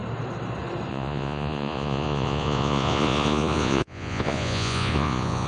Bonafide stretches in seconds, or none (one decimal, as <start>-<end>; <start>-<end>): 0.0-0.9